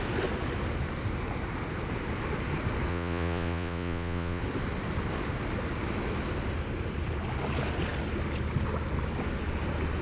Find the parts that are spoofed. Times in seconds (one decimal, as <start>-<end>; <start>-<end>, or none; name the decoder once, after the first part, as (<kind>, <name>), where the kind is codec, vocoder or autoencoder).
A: 2.9-4.4 (vocoder, Vocos)